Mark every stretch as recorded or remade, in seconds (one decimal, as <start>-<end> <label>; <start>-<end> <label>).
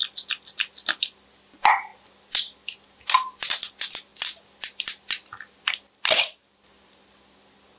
0.0-7.8 recorded